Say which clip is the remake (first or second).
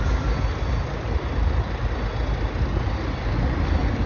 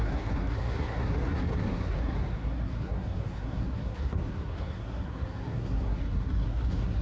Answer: second